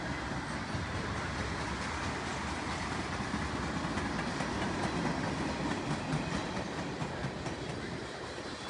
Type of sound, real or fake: real